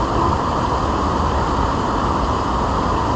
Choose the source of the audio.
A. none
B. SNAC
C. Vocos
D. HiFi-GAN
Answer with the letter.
A